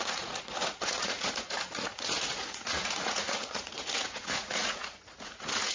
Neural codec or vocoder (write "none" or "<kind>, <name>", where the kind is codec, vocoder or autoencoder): vocoder, Vocos